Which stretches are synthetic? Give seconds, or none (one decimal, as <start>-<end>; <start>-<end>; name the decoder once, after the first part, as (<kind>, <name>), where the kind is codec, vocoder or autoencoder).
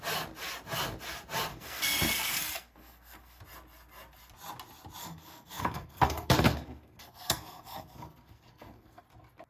1.5-3.4 (codec, SNAC); 5.0-9.0